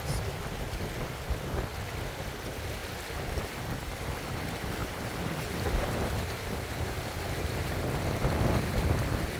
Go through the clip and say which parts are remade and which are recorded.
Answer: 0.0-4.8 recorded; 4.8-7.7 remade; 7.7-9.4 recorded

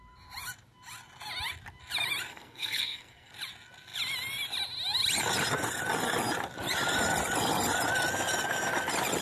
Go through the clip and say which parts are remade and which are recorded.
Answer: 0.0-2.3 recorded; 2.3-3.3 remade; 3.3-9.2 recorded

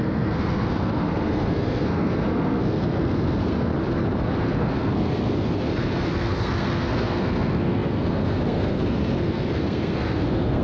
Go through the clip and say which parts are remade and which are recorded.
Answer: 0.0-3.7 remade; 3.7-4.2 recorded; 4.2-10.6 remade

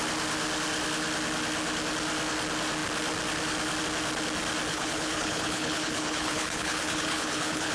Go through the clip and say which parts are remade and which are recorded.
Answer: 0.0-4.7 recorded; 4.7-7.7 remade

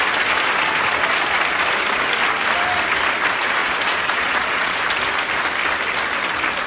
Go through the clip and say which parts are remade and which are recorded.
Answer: 0.0-3.6 recorded; 3.6-4.8 remade; 4.8-6.7 recorded

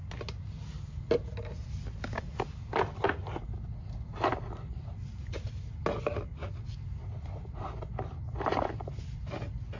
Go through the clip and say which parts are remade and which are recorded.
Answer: 0.0-9.8 recorded

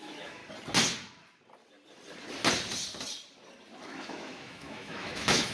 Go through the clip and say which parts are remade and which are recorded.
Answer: 0.0-0.4 remade; 0.4-3.7 recorded; 3.7-5.5 remade